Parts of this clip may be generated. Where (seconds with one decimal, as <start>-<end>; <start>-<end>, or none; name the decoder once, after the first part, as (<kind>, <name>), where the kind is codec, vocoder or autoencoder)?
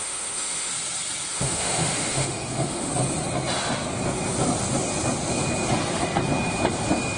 0.0-0.7 (autoencoder, DAC-VAE); 1.3-2.9